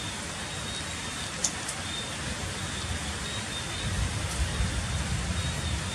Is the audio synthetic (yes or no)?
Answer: no